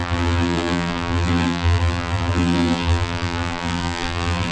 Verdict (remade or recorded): remade